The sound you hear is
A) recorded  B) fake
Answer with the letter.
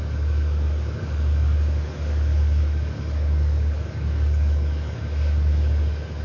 B